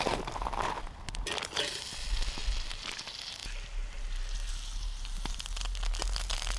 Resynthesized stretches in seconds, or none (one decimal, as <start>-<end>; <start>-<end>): none